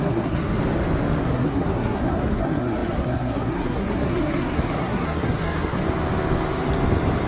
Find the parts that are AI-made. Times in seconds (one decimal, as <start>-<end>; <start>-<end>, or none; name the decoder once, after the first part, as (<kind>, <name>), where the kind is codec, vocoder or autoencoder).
0.0-0.6 (codec, SNAC); 1.2-5.8